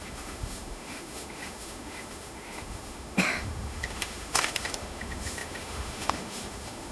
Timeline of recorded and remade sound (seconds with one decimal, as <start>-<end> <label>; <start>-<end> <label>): 0.0-6.9 remade